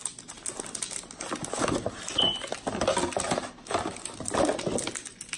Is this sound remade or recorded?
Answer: recorded